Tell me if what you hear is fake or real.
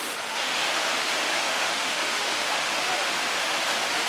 fake